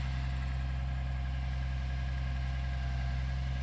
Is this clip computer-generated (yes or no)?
no